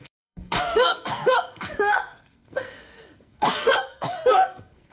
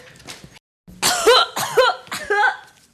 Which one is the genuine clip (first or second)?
second